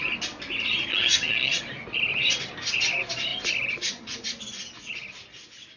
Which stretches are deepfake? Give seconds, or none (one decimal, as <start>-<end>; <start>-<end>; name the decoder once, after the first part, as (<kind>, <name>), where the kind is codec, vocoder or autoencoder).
0.9-1.6 (vocoder, HiFi-GAN)